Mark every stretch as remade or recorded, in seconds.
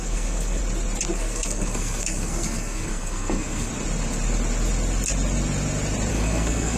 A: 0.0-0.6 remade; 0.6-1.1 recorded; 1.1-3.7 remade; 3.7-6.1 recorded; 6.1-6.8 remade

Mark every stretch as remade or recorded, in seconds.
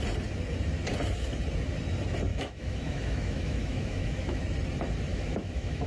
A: 0.0-2.3 recorded; 2.3-4.4 remade; 4.4-5.1 recorded; 5.1-5.9 remade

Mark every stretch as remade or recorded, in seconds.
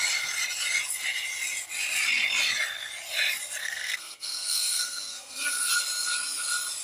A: 0.0-3.6 recorded; 3.6-5.7 remade; 5.7-6.8 recorded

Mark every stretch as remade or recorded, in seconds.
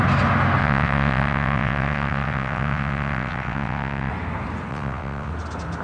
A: 0.0-0.6 recorded; 0.6-4.1 remade; 4.1-4.7 recorded; 4.7-5.3 remade; 5.3-5.8 recorded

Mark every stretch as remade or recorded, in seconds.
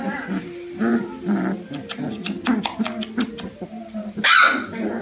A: 0.0-5.0 recorded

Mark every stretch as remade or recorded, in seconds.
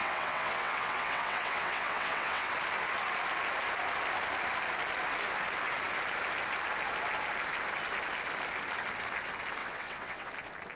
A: 0.0-2.5 remade; 2.5-9.6 recorded; 9.6-10.3 remade; 10.3-10.8 recorded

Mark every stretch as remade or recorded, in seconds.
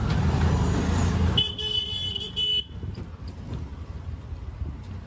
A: 0.0-5.1 recorded